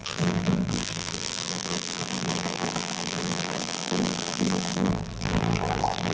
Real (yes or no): no